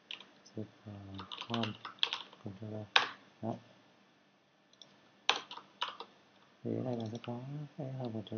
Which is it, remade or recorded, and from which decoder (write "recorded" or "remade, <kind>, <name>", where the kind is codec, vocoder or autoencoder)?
recorded